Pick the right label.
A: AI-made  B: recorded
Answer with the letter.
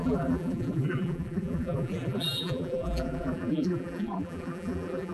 A